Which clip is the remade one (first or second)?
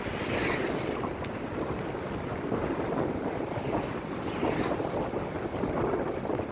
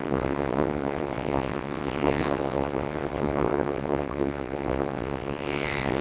second